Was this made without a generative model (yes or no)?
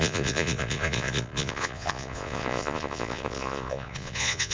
no